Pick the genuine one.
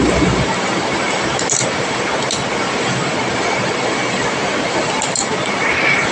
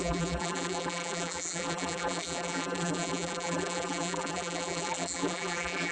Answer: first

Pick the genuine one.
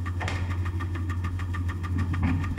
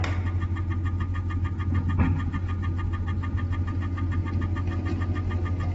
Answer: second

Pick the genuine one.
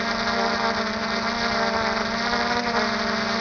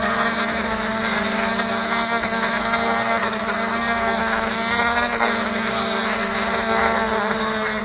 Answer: first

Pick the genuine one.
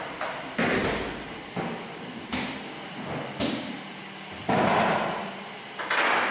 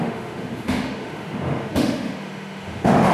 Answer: first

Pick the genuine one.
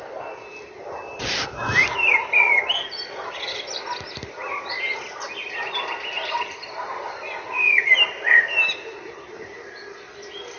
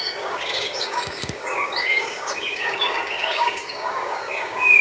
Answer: first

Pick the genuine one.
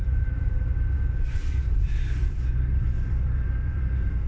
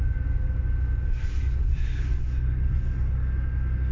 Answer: second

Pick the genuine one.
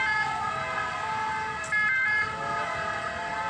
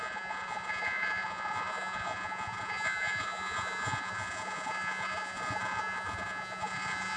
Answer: first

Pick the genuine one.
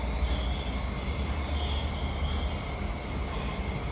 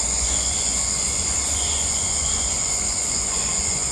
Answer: first